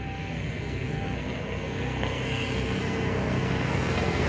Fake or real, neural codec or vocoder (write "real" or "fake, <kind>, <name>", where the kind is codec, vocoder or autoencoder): fake, codec, SNAC